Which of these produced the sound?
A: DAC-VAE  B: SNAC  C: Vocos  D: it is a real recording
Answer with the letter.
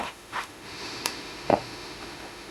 A